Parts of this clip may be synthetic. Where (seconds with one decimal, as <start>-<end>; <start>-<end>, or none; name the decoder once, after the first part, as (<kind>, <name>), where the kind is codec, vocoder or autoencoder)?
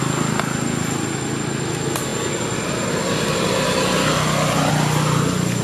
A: none